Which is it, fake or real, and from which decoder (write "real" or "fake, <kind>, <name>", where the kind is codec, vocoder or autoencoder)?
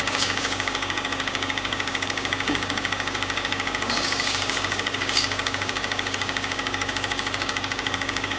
fake, codec, DAC